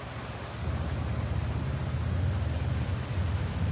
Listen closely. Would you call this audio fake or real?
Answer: real